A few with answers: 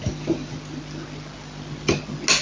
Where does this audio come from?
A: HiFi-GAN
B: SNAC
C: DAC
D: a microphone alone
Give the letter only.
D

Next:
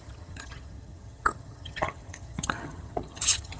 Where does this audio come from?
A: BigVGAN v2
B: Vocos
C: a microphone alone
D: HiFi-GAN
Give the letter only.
D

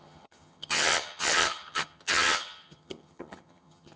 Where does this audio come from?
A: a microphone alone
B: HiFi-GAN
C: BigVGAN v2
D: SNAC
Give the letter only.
B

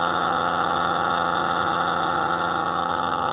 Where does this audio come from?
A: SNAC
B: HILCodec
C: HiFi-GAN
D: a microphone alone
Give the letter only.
C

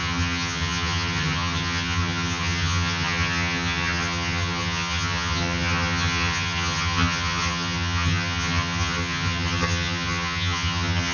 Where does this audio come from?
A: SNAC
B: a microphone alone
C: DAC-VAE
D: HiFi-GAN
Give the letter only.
D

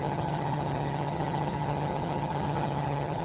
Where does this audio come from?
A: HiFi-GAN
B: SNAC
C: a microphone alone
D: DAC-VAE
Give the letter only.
A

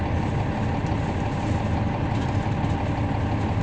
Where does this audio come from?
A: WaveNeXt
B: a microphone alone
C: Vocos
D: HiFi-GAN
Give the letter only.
B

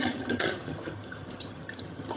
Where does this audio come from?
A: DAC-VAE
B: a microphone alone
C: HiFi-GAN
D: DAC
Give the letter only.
C